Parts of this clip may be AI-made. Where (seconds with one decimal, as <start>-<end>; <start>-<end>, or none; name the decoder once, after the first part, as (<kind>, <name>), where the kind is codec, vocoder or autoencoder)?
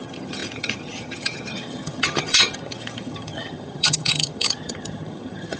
0.0-5.6 (vocoder, HiFi-GAN)